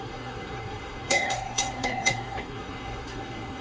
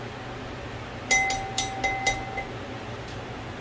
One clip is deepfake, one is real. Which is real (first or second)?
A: second